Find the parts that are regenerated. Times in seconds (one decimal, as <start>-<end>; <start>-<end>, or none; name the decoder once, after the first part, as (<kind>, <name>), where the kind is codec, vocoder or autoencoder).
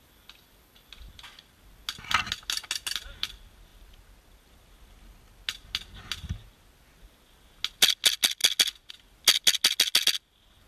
none